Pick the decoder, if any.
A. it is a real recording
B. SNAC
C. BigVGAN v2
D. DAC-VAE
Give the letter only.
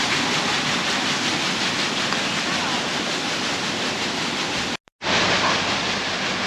A